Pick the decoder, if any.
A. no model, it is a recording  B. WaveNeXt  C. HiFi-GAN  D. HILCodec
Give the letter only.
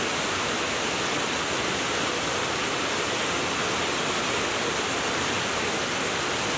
A